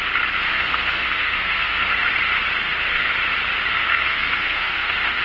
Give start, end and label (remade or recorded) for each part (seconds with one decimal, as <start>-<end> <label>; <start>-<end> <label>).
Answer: 0.0-0.5 recorded; 0.5-1.9 remade; 1.9-2.6 recorded; 2.6-3.1 remade; 3.1-3.7 recorded; 3.7-5.2 remade